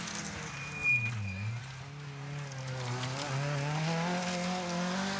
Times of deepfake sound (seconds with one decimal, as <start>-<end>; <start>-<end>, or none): none